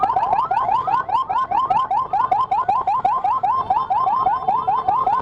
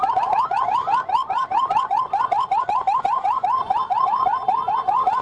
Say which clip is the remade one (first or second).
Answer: second